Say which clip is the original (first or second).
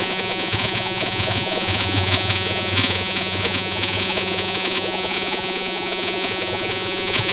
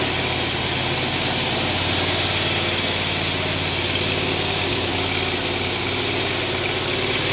second